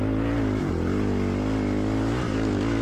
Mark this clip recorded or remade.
recorded